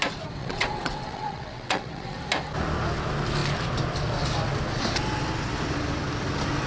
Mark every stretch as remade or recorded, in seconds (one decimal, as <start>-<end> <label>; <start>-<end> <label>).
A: 0.0-0.4 recorded; 0.4-2.2 remade; 2.2-6.7 recorded